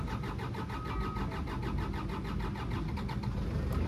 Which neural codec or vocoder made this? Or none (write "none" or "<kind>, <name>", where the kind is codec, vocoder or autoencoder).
none